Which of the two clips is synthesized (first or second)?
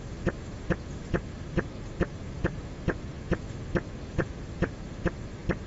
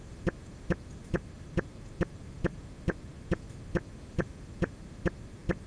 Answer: second